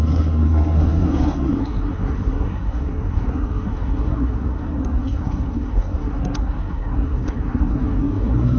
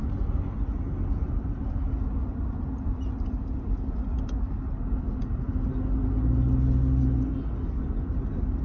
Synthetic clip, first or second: first